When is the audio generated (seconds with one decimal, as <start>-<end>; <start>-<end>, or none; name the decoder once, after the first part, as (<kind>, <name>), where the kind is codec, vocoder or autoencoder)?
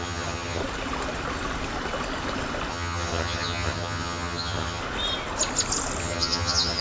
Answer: 0.0-0.6 (vocoder, HiFi-GAN); 2.7-4.8; 6.0-6.8